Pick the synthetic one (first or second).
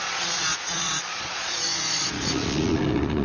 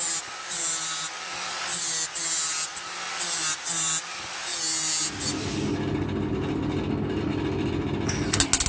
first